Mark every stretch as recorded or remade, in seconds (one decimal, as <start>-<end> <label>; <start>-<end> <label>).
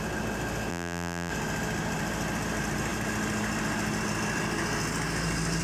0.0-0.7 recorded; 0.7-1.3 remade; 1.3-5.6 recorded